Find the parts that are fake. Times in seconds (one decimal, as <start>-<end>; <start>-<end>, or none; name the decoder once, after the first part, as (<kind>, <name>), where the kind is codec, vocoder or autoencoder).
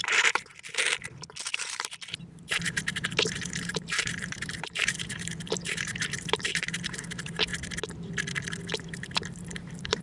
0.0-0.5 (vocoder, BigVGAN v2); 1.5-7.5; 8.8-10.0